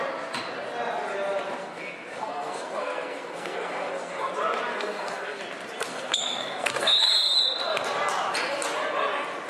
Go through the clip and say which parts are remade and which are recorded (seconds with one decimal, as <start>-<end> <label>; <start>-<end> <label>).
0.0-1.6 recorded; 1.6-4.3 remade; 4.3-4.7 recorded; 4.7-5.4 remade; 5.4-5.9 recorded; 5.9-7.1 remade; 7.1-9.5 recorded